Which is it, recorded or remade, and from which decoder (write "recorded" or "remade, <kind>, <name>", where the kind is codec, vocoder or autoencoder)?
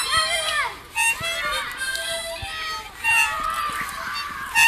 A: recorded